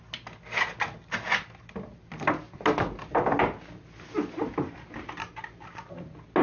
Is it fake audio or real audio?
real